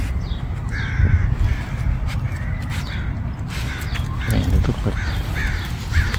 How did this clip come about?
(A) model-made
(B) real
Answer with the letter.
B